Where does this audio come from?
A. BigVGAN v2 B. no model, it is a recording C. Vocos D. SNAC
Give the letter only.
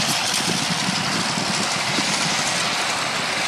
B